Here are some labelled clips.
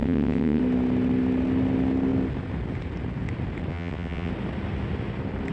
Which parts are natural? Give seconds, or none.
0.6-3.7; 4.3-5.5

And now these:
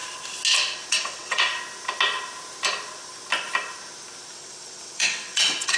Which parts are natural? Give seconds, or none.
0.0-0.9; 1.5-4.3

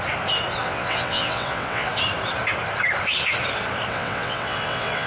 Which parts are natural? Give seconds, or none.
0.0-0.6; 1.9-3.9